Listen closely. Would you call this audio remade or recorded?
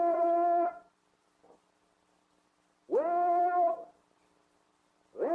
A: recorded